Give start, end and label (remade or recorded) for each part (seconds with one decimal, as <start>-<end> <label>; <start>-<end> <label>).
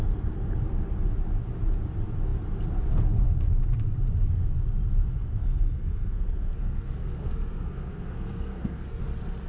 0.0-5.2 recorded; 5.2-9.0 remade; 9.0-9.5 recorded